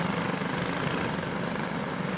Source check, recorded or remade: recorded